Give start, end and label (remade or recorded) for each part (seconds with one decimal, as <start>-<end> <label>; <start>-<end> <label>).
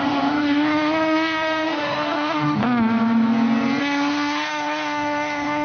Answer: 0.0-2.6 remade; 2.6-3.8 recorded; 3.8-5.6 remade